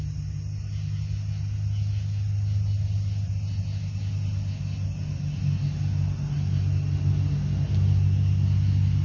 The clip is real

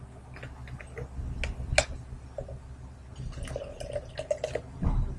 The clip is real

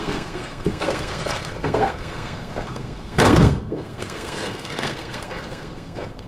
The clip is fake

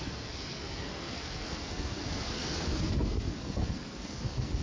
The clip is fake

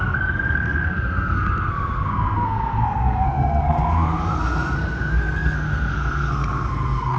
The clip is fake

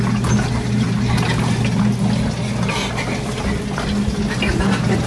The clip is real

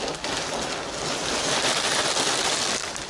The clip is real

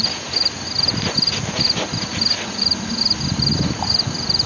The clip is real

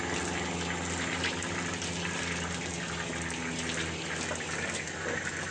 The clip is real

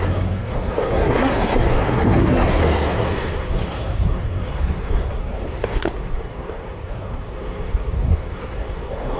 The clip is fake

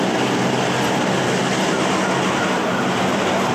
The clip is real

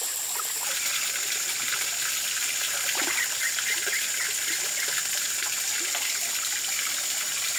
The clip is real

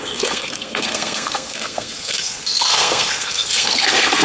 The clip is fake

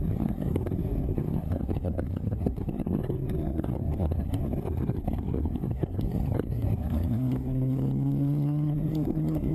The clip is fake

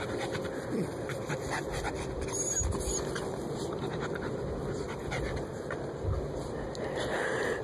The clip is real